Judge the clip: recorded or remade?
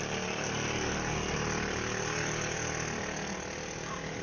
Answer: recorded